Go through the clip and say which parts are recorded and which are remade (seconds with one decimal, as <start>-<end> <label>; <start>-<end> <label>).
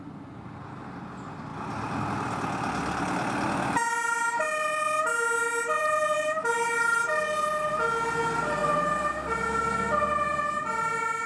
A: 0.0-11.3 recorded